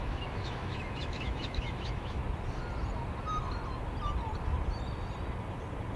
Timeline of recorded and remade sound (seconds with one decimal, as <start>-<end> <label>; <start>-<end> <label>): 0.0-2.2 remade; 2.2-6.0 recorded

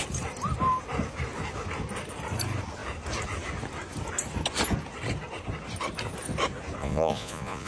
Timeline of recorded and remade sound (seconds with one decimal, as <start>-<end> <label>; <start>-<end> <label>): 0.0-6.8 recorded; 6.8-7.7 remade